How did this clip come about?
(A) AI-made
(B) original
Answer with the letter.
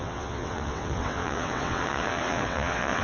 A